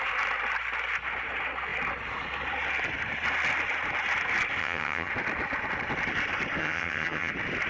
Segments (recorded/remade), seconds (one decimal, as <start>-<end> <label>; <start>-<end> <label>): 0.0-4.6 recorded; 4.6-5.1 remade; 5.1-6.6 recorded; 6.6-7.3 remade; 7.3-7.7 recorded